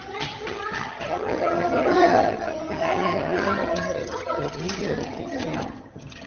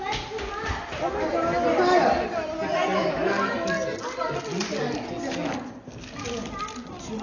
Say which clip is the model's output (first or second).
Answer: first